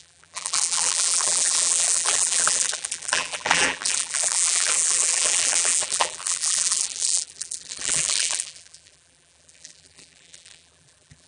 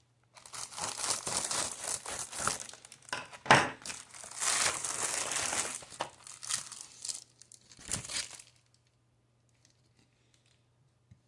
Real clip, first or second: second